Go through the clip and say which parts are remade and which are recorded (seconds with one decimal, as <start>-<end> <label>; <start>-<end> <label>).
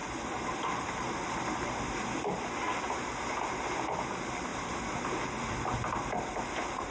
0.0-4.5 recorded; 4.5-5.2 remade; 5.2-6.9 recorded